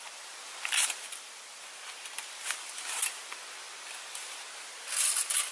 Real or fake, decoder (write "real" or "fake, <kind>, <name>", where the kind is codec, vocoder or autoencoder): fake, vocoder, BigVGAN v2